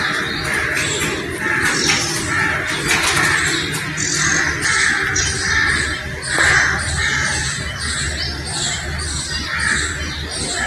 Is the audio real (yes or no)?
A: yes